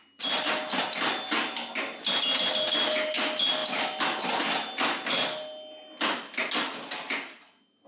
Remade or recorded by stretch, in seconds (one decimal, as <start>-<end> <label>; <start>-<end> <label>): 0.0-7.9 recorded